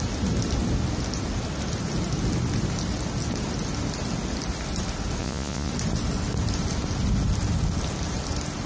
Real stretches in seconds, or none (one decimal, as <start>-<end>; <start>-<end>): 0.0-5.2; 5.7-8.7